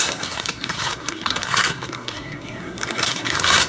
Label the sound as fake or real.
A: fake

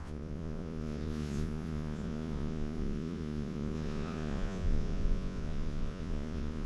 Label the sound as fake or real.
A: fake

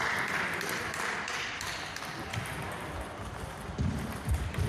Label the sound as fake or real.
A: fake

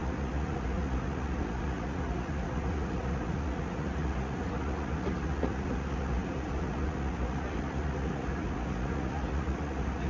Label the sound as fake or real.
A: fake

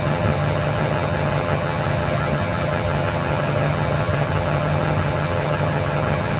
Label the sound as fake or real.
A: fake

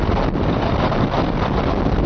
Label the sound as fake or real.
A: real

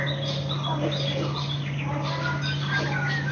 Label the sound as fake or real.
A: real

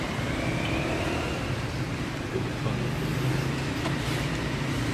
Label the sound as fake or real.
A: fake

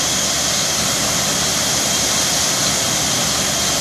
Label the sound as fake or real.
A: real